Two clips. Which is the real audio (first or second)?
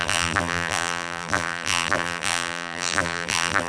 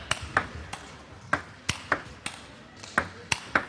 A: second